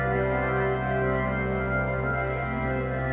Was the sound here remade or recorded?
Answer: remade